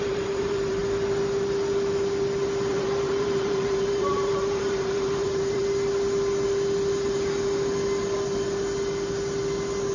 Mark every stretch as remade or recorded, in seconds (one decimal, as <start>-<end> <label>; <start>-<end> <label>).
0.0-0.8 remade; 0.8-2.7 recorded; 2.7-5.6 remade; 5.6-9.9 recorded